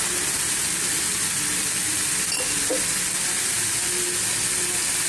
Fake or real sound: real